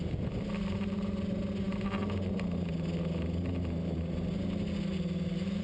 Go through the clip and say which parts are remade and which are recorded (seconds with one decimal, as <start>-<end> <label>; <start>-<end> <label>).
0.0-5.6 recorded